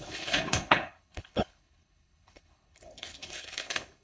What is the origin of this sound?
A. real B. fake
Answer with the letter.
B